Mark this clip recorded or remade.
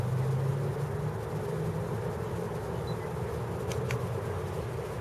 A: recorded